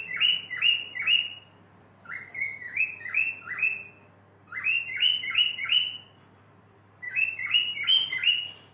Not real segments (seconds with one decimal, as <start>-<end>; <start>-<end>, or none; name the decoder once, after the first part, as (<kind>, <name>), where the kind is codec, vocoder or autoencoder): 6.4-7.3 (vocoder, BigVGAN v2)